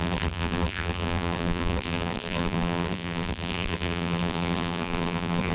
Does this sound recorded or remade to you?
remade